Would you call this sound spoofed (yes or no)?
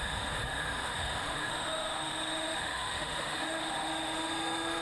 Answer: yes